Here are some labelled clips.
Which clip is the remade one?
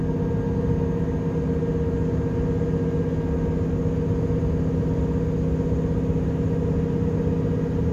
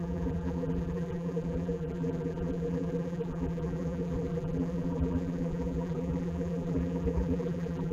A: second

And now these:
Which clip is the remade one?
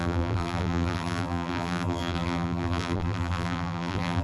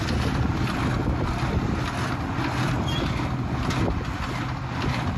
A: first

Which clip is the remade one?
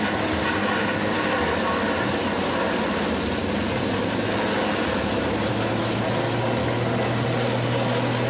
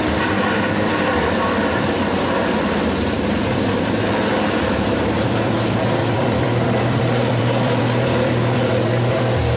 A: second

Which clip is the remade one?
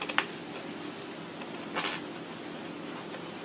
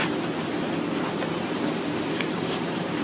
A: second